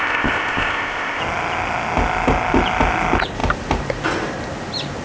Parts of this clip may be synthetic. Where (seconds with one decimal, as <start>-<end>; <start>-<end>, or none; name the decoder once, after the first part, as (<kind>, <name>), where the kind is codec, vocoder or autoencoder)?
0.0-1.2 (codec, ZipCodec)